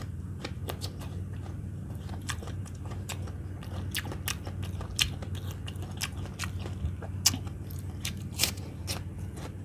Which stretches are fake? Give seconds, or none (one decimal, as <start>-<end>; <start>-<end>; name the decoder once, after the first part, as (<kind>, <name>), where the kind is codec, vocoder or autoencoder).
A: 0.0-0.6 (vocoder, BigVGAN v2); 1.6-3.1; 7.5-8.8